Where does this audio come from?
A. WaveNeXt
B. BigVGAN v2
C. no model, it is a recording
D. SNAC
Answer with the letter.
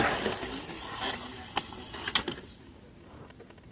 C